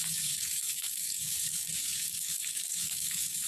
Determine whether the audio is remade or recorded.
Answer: remade